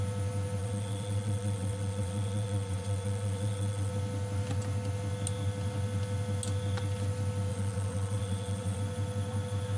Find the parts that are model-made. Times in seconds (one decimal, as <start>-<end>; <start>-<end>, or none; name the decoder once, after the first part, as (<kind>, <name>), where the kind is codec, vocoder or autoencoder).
0.6-3.9 (vocoder, WaveNeXt); 7.5-8.8